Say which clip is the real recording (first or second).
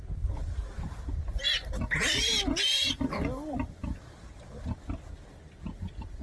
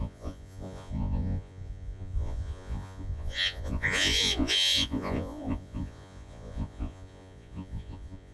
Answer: first